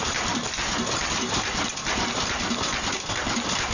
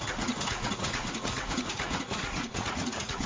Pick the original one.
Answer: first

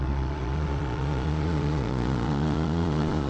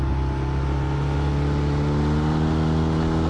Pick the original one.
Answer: second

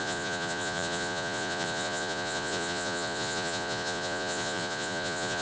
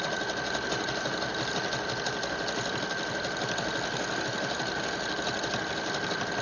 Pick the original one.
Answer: second